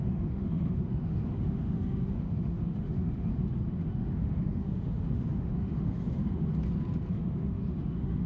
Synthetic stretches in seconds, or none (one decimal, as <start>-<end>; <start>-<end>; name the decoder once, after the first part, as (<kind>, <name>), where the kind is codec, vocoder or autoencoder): 0.0-3.3 (autoencoder, DAC-VAE); 3.9-6.5; 7.1-8.3